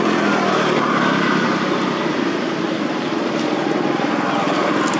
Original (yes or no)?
yes